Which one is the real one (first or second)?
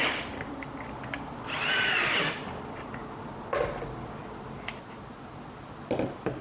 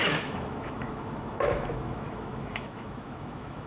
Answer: first